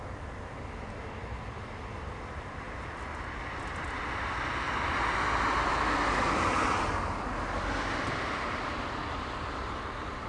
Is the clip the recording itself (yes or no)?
yes